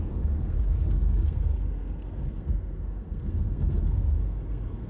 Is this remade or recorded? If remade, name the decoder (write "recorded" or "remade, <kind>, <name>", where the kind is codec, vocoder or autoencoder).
remade, codec, SNAC